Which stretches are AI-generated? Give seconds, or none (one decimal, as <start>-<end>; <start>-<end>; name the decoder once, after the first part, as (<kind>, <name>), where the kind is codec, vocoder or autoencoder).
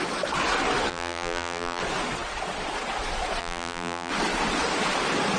0.9-1.8 (vocoder, BigVGAN v2); 3.4-4.1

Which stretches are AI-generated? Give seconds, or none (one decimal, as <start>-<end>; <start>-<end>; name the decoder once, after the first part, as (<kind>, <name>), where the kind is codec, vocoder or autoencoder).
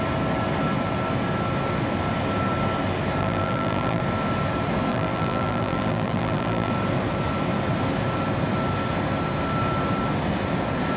3.2-4.0 (vocoder, BigVGAN v2); 4.9-6.7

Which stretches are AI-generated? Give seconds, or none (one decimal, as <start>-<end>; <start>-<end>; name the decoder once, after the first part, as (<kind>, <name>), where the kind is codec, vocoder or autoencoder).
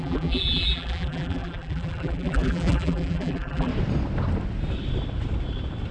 0.0-3.7 (vocoder, BigVGAN v2)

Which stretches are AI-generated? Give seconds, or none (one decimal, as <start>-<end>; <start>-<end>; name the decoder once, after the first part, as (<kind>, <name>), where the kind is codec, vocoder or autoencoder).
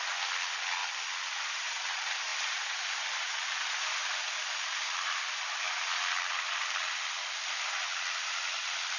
0.8-1.7 (vocoder, BigVGAN v2); 2.3-2.8; 4.0-6.9